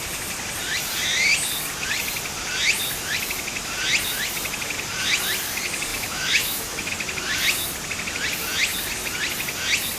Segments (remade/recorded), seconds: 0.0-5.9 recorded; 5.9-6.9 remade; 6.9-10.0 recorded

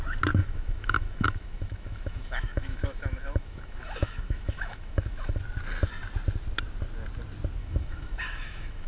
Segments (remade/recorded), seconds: 0.0-0.4 recorded; 0.4-5.4 remade; 5.4-7.6 recorded; 7.6-8.9 remade

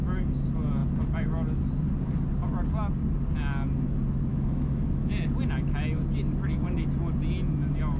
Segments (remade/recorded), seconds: 0.0-4.3 recorded; 4.3-5.1 remade; 5.1-8.0 recorded

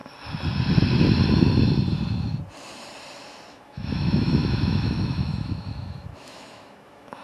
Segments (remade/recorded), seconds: 0.0-3.5 recorded; 3.5-7.2 remade

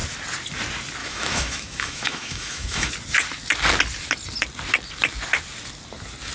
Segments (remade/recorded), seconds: 0.0-1.0 recorded; 1.0-2.9 remade; 2.9-6.3 recorded

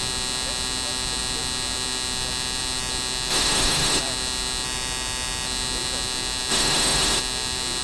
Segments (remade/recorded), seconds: 0.0-3.3 recorded; 3.3-4.0 remade; 4.0-6.5 recorded; 6.5-7.2 remade; 7.2-7.8 recorded

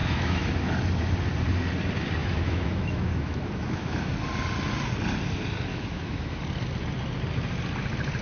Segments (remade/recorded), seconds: 0.0-0.7 remade; 0.7-2.2 recorded; 2.2-4.1 remade; 4.1-5.7 recorded; 5.7-6.4 remade; 6.4-8.2 recorded

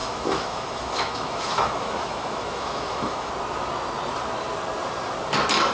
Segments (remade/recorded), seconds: 0.0-3.3 remade; 3.3-5.7 recorded